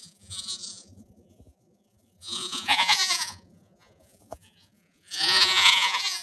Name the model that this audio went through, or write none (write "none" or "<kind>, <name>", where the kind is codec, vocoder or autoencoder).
vocoder, Vocos